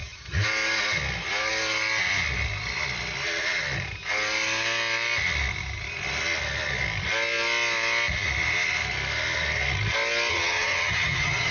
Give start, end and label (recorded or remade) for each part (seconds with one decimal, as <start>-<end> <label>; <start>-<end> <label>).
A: 0.0-10.3 recorded; 10.3-11.5 remade